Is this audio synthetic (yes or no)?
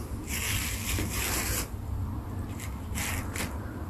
no